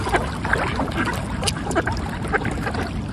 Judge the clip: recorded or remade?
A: recorded